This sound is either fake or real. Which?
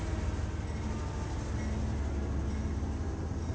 real